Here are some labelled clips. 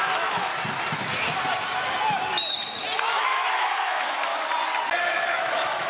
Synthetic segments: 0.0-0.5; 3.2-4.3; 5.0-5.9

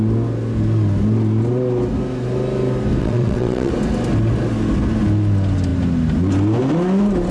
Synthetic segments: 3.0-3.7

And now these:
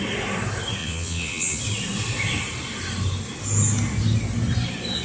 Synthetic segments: 0.8-1.6

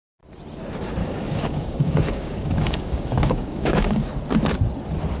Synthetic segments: 1.0-4.1

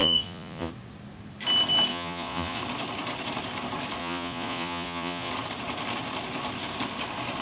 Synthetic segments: 0.0-0.7; 1.9-2.6; 4.0-5.3